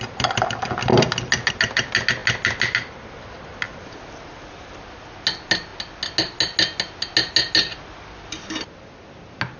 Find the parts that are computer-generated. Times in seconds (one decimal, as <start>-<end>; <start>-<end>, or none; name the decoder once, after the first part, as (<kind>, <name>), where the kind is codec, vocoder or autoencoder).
none